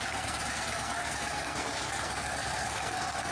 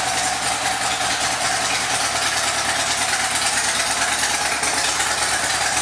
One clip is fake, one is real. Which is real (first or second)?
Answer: second